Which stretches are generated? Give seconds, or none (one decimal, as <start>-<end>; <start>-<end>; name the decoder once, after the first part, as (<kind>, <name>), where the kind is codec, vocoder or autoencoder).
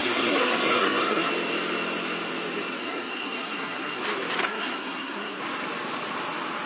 0.0-1.3 (codec, SNAC); 2.8-4.0; 4.4-5.4